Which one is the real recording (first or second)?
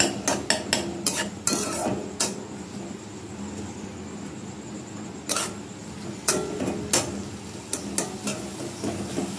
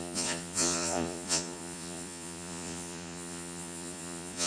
first